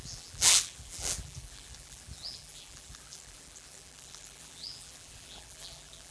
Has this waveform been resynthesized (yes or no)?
yes